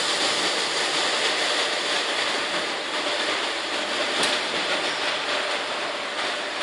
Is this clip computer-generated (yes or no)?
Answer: no